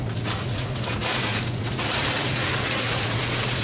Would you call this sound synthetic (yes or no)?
yes